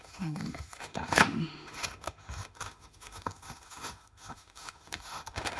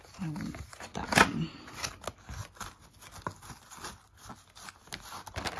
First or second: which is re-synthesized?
first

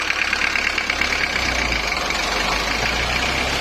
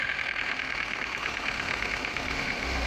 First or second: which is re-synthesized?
second